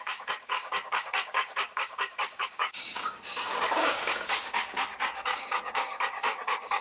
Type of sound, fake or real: fake